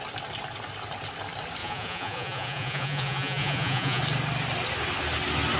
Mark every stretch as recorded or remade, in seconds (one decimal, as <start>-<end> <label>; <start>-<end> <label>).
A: 0.0-1.6 recorded; 1.6-4.0 remade; 4.0-5.6 recorded